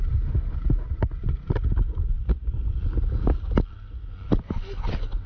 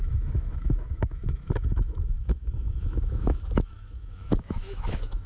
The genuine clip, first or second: first